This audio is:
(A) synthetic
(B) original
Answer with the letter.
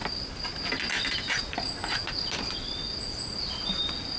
B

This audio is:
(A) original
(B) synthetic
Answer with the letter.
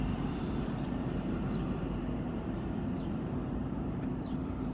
B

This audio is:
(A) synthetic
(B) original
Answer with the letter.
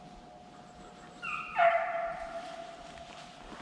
B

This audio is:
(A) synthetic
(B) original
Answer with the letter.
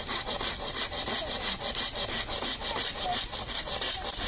B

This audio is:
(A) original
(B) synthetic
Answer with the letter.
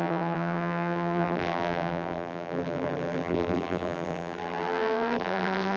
B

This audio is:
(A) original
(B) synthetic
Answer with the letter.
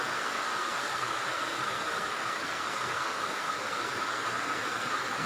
B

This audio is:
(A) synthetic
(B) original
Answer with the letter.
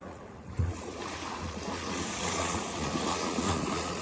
A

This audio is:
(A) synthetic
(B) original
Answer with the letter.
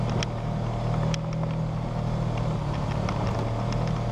B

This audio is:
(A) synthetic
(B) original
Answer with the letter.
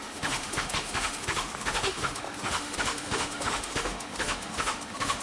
A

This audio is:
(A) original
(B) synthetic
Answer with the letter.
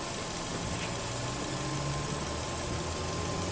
A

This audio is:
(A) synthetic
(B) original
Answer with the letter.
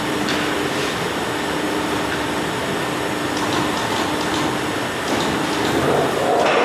B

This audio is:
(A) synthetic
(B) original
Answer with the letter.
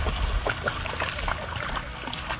B